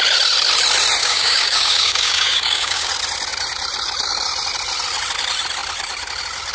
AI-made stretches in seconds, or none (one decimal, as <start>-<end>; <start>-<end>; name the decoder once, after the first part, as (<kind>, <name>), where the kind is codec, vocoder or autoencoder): 1.0-2.9 (codec, DAC)